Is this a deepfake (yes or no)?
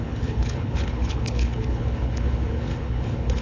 yes